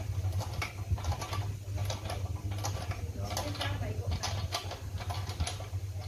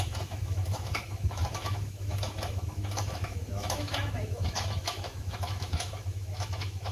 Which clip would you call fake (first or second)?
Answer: second